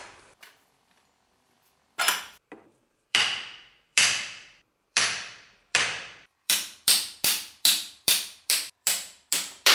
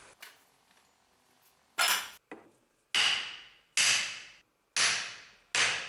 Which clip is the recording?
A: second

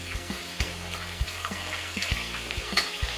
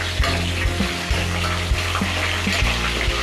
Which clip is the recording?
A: second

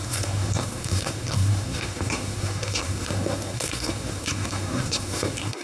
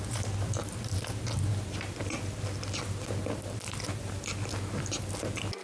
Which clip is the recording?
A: second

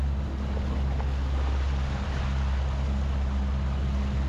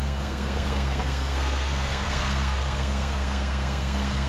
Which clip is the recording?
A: first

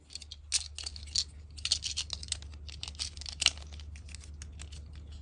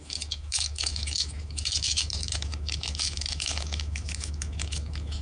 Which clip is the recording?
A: first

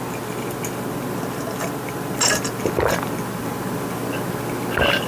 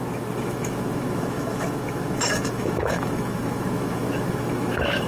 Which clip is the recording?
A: first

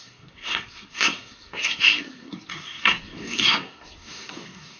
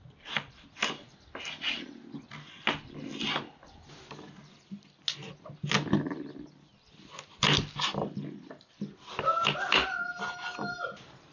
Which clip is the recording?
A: second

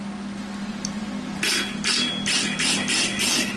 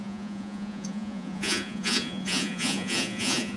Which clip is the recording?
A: first